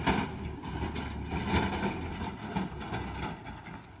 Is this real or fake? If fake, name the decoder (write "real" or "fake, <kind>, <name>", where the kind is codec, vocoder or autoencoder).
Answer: real